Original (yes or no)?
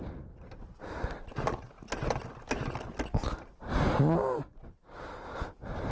yes